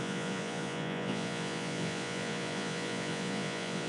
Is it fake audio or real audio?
fake